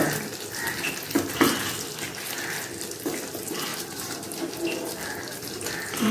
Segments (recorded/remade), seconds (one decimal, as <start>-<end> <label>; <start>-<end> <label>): 0.0-3.7 recorded; 3.7-4.5 remade; 4.5-6.1 recorded